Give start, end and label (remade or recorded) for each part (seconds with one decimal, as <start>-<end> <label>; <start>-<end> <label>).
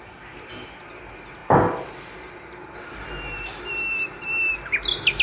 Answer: 0.0-5.2 recorded